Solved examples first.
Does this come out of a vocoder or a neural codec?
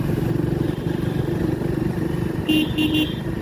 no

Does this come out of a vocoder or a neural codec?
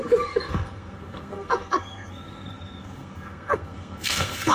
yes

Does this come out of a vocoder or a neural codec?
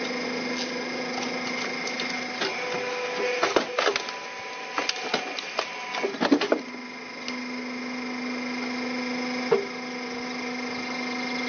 no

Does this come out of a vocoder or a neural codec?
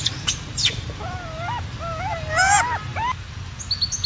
no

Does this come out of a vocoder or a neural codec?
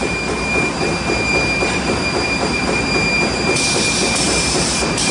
yes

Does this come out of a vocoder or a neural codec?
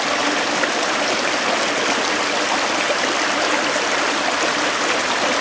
no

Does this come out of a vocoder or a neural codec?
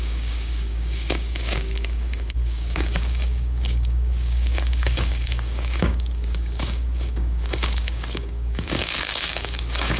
yes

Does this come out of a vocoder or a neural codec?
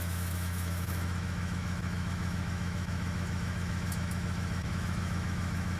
yes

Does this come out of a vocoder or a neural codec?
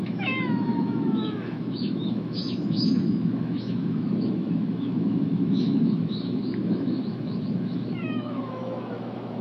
yes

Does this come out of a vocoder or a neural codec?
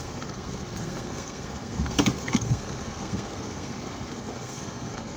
yes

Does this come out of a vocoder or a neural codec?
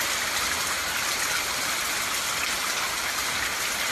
no